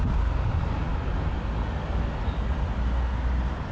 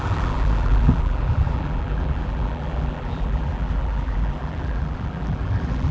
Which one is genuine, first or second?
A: first